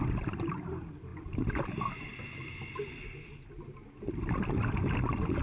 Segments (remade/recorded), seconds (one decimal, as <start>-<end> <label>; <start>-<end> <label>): 0.0-5.4 recorded